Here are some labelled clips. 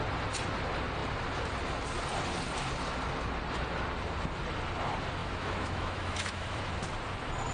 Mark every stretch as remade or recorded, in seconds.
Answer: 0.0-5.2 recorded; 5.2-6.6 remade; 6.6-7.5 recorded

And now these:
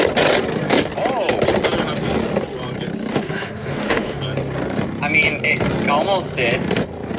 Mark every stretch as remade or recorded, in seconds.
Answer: 0.0-3.1 recorded; 3.1-4.2 remade; 4.2-7.2 recorded

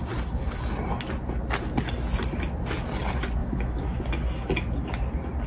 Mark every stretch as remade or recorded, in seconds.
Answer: 0.0-3.4 recorded; 3.4-4.0 remade; 4.0-5.5 recorded

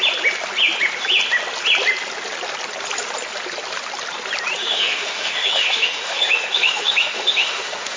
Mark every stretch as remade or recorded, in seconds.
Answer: 0.0-4.6 recorded; 4.6-8.0 remade

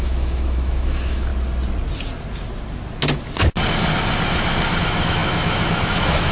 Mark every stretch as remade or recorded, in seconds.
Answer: 0.0-1.3 remade; 1.3-4.8 recorded; 4.8-6.3 remade

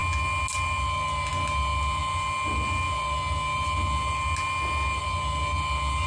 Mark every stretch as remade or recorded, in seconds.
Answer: 0.0-6.1 recorded